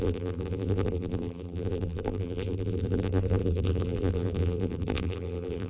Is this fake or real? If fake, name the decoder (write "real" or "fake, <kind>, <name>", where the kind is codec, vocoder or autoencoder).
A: fake, vocoder, BigVGAN v2